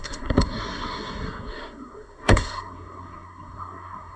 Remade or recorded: remade